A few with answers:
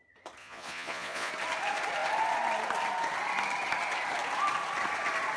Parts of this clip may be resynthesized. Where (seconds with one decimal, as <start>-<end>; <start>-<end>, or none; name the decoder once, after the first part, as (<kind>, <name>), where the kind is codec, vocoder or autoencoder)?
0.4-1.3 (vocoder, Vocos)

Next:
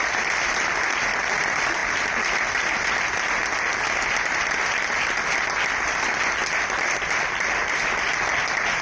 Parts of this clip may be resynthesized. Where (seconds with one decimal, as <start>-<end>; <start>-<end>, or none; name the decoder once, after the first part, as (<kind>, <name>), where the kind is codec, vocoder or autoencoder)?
none

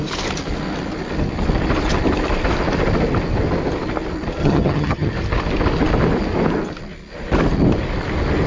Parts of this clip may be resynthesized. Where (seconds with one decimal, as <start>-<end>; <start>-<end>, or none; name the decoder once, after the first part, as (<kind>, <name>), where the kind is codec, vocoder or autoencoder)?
4.4-5.1 (vocoder, HiFi-GAN)

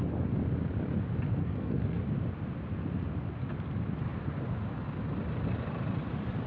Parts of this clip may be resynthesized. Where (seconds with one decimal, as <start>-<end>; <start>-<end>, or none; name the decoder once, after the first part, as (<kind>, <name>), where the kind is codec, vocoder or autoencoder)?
1.4-2.0 (codec, SNAC)

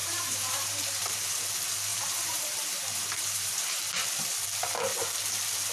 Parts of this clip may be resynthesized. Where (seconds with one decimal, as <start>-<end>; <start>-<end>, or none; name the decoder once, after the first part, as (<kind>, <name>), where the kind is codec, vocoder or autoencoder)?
0.0-1.4 (vocoder, BigVGAN v2); 1.9-3.8